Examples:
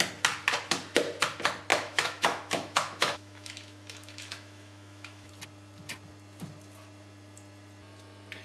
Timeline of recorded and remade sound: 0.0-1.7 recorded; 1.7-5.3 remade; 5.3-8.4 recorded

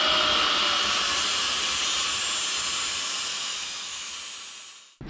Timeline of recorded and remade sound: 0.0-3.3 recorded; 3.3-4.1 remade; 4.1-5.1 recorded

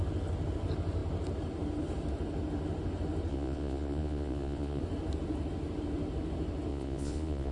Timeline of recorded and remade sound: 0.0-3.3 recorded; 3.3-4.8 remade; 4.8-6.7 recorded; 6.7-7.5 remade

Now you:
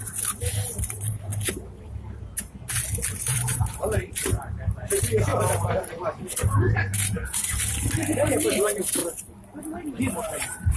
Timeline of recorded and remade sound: 0.0-1.3 remade; 1.3-3.2 recorded; 3.2-9.0 remade; 9.0-9.6 recorded; 9.6-10.8 remade